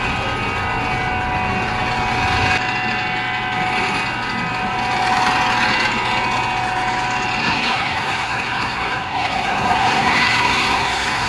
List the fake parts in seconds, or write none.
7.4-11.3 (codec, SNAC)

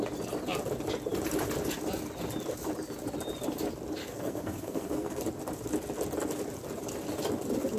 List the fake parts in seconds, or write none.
4.0-5.2 (codec, SNAC)

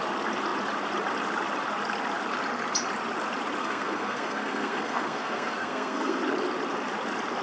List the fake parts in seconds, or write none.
3.6-6.2 (codec, SNAC)

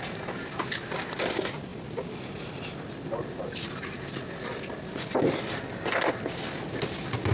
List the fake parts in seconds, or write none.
none

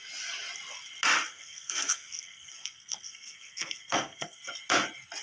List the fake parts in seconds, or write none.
1.3-4.4 (codec, SNAC)

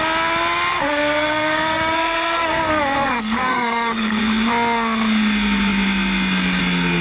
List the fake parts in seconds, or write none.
0.7-4.2 (codec, SNAC)

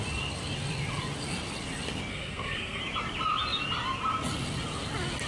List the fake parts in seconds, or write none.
2.1-2.8 (codec, SNAC)

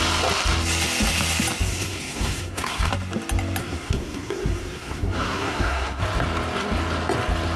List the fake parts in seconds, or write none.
1.7-2.9 (codec, SNAC); 3.6-6.0